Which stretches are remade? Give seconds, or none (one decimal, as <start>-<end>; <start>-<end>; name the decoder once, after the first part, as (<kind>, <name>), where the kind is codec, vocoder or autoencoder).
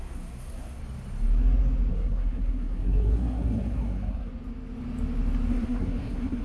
0.0-0.8 (codec, SNAC); 1.9-4.3; 5.5-6.4